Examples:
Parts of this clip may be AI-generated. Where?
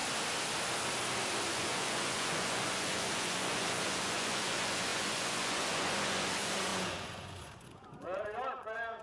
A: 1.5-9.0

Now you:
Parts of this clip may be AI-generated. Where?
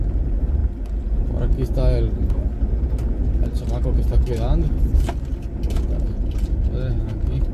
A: none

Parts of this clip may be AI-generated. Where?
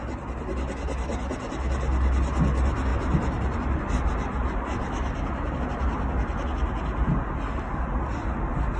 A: none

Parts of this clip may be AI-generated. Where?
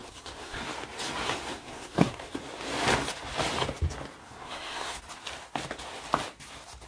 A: 0.0-0.6; 1.5-2.4; 4.2-5.0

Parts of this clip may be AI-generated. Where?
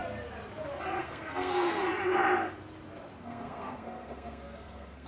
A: 1.0-1.8; 3.2-5.1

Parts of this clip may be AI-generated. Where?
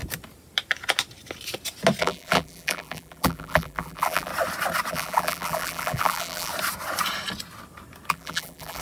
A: 2.0-4.3; 4.9-6.5; 8.1-8.8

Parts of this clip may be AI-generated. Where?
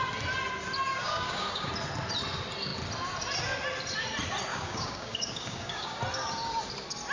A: 0.9-1.7; 4.5-6.0